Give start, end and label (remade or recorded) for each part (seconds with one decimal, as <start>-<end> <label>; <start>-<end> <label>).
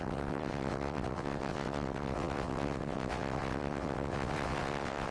0.0-5.1 remade